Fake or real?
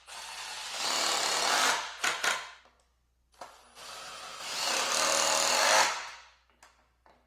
real